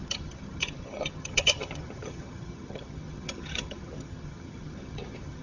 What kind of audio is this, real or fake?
fake